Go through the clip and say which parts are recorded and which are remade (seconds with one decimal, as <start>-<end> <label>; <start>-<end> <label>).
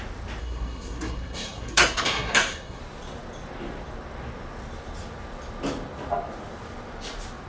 0.0-0.4 recorded; 0.4-2.8 remade; 2.8-7.5 recorded